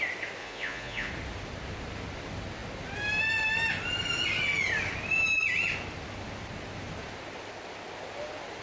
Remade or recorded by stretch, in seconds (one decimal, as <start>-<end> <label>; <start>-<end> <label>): 0.0-0.4 recorded; 0.4-1.1 remade; 1.1-8.6 recorded